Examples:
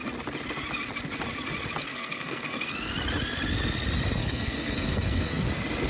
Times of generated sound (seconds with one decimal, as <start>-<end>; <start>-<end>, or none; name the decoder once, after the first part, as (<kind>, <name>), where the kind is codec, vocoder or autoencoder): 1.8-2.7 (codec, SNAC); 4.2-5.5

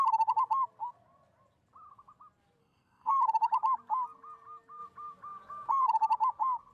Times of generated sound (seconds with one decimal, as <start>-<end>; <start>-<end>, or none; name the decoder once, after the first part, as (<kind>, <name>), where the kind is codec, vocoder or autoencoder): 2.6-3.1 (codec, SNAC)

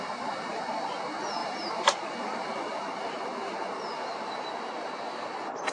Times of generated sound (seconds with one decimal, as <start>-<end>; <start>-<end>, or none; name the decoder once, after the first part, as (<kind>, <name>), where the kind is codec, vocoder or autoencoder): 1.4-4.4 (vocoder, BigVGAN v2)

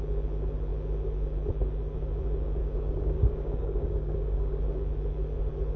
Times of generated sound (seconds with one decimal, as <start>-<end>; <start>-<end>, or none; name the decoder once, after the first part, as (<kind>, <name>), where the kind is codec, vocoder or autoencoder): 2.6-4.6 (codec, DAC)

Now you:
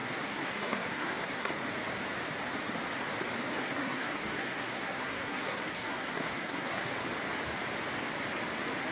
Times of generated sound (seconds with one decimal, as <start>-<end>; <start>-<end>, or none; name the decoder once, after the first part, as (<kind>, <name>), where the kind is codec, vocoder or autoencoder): 0.0-1.5 (codec, SNAC); 3.6-6.9